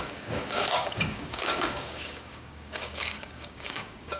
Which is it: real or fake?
fake